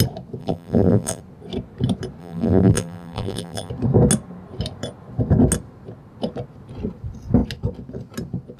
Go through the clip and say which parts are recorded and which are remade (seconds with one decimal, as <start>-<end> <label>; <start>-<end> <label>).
0.0-0.4 recorded; 0.4-1.2 remade; 1.2-2.2 recorded; 2.2-3.7 remade; 3.7-8.6 recorded

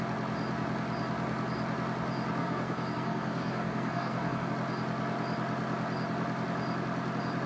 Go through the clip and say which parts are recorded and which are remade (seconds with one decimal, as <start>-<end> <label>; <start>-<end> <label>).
0.0-2.4 recorded; 2.4-4.5 remade; 4.5-7.5 recorded

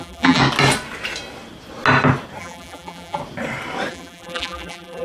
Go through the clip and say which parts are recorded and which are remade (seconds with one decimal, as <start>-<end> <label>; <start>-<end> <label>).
0.0-0.4 remade; 0.4-2.4 recorded; 2.4-3.2 remade; 3.2-3.9 recorded; 3.9-5.0 remade

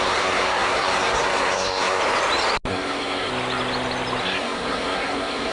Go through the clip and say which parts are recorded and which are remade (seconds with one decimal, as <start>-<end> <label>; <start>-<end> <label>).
0.0-2.0 remade; 2.0-2.7 recorded; 2.7-3.3 remade; 3.3-4.2 recorded; 4.2-5.5 remade

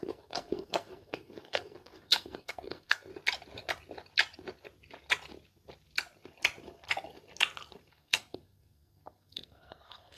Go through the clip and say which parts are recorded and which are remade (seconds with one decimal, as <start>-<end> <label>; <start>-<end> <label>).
0.0-3.1 remade; 3.1-7.9 recorded; 7.9-10.2 remade

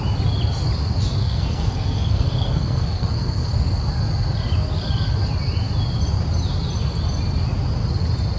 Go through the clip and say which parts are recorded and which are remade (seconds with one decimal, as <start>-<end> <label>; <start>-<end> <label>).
0.0-1.2 recorded; 1.2-3.5 remade; 3.5-8.4 recorded

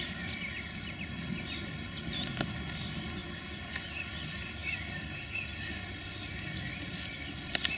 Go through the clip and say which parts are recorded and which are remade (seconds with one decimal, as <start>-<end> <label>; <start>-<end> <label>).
0.0-7.8 recorded